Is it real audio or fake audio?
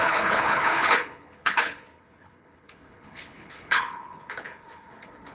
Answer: fake